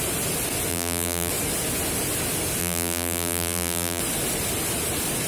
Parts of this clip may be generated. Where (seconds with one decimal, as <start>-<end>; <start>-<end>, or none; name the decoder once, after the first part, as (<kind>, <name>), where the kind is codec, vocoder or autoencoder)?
0.7-1.3 (vocoder, BigVGAN v2); 2.6-4.0